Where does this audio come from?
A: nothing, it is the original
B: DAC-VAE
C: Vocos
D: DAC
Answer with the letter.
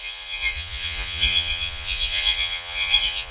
C